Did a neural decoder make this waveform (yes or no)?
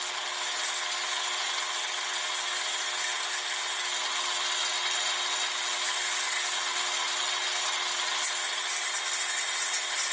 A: no